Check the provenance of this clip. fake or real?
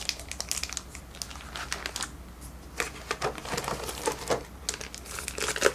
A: real